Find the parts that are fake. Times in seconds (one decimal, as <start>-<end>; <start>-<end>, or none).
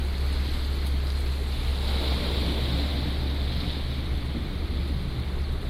none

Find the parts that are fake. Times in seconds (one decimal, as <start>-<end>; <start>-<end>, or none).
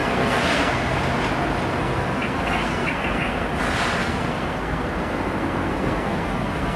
0.0-1.0; 1.7-3.5; 4.0-6.8